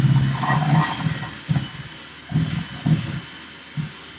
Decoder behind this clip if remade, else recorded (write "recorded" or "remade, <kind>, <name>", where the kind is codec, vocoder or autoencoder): recorded